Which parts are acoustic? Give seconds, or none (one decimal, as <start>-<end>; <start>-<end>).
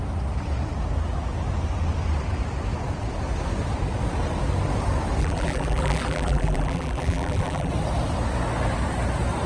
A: 0.0-5.2; 7.7-9.5